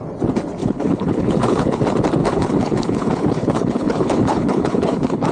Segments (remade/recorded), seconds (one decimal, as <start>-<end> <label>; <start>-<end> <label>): 0.0-0.6 recorded; 0.6-1.8 remade; 1.8-2.2 recorded; 2.2-5.3 remade